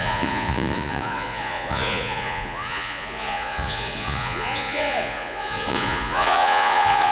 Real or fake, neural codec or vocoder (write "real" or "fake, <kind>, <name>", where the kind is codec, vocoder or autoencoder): fake, vocoder, Vocos